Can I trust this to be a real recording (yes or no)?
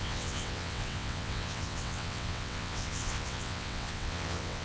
no